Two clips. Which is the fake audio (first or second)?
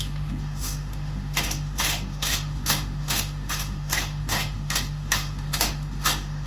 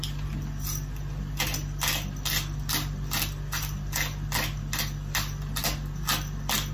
first